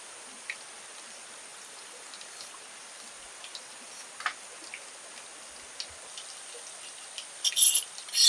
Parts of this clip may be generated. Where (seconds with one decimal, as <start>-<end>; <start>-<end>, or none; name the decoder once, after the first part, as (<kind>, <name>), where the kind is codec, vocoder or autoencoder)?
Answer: 1.5-2.1 (vocoder, BigVGAN v2)